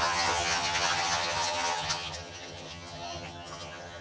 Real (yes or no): no